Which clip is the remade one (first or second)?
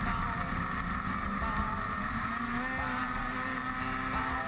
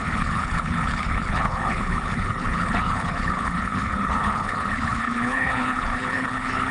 second